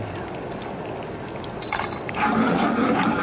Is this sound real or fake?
real